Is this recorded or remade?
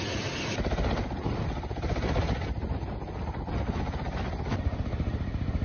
recorded